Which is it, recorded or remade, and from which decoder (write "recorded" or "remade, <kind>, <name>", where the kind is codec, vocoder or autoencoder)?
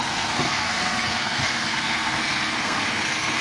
remade, codec, SNAC